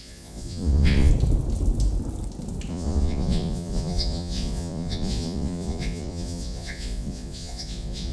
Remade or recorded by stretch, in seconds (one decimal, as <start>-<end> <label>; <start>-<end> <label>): 0.0-1.1 remade; 1.1-2.7 recorded; 2.7-8.1 remade